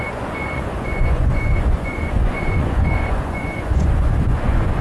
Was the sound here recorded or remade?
remade